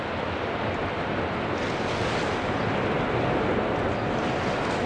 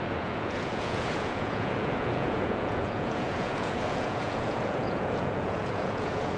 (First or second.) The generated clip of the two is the second